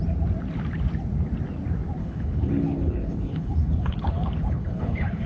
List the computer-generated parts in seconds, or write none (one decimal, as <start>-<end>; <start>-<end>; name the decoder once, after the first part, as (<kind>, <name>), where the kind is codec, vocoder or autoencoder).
2.0-5.3 (codec, HILCodec)